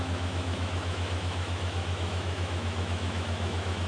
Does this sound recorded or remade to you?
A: remade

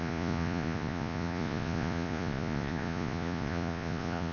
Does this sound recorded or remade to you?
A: remade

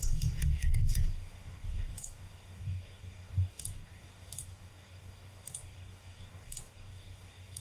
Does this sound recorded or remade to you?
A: remade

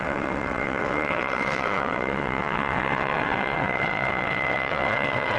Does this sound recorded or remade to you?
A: remade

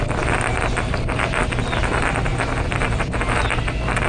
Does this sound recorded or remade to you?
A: recorded